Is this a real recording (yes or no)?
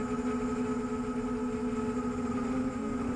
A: yes